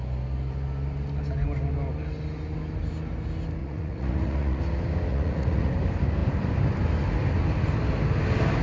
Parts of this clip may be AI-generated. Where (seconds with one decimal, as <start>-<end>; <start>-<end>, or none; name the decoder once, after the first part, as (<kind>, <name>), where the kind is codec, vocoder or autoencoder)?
3.6-4.6 (vocoder, Vocos); 5.1-5.7